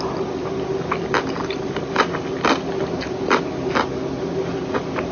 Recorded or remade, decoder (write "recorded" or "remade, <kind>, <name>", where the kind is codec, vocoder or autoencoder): recorded